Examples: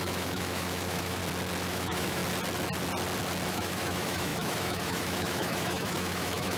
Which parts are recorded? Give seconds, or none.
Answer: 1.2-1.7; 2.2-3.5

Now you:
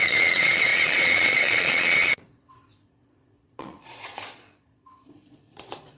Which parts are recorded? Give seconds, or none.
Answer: none